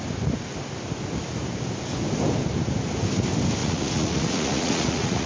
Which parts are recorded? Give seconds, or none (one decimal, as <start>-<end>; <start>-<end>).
0.0-3.6